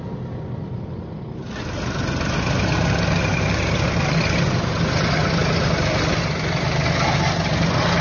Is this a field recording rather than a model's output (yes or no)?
yes